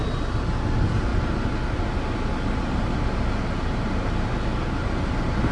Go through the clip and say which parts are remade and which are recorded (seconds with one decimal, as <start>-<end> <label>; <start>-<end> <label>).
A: 0.0-5.5 recorded